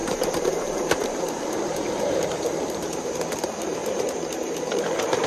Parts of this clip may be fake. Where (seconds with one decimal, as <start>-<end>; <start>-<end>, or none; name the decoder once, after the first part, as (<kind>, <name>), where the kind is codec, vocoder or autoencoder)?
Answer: 0.0-5.3 (vocoder, BigVGAN v2)